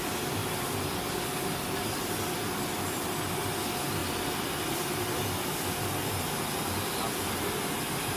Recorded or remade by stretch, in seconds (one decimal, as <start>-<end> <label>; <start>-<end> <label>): 0.0-8.2 recorded